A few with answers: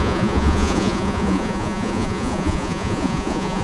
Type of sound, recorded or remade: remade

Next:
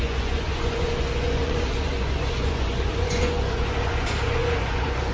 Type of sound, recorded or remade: remade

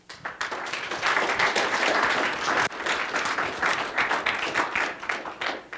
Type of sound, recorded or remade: recorded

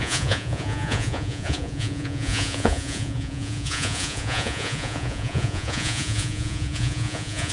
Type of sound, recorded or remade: remade